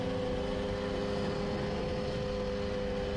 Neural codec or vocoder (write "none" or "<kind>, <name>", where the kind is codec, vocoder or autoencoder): none